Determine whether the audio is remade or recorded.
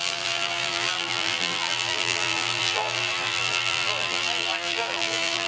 remade